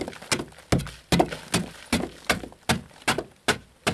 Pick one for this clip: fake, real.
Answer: real